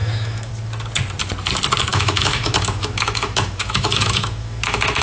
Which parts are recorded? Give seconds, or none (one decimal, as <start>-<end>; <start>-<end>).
0.5-1.9